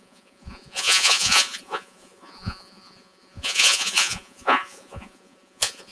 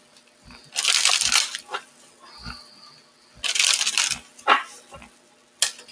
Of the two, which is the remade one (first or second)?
first